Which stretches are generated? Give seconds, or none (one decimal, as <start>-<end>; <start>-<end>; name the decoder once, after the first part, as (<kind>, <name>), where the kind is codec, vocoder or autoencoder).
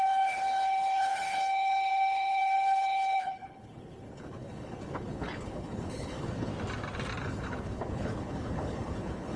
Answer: 0.0-6.5 (codec, HILCodec); 7.2-9.4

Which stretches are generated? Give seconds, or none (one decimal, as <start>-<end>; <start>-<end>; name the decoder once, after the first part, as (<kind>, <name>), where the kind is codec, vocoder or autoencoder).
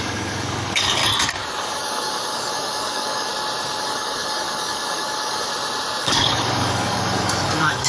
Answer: 0.0-1.0 (codec, DAC); 1.6-3.3; 3.8-5.5; 6.0-7.9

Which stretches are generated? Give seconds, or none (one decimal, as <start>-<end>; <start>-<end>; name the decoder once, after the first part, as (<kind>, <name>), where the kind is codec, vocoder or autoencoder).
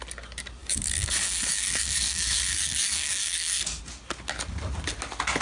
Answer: 0.6-3.8 (codec, DAC)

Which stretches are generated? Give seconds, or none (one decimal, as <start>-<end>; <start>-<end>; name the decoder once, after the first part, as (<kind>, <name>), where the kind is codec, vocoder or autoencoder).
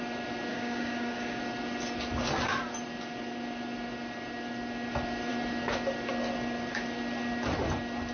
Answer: 0.5-1.4 (codec, DAC)